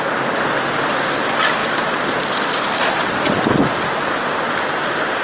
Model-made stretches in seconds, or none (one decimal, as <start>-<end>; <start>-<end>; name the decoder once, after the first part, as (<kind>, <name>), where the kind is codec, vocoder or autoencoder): none